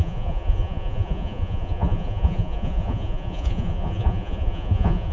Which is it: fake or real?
fake